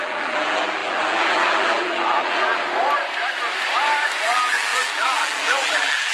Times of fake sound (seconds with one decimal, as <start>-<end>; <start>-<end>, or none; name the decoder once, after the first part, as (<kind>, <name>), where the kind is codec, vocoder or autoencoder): 0.0-2.6 (vocoder, BigVGAN v2); 4.2-6.1